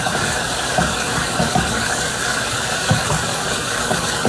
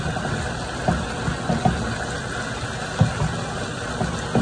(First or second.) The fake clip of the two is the first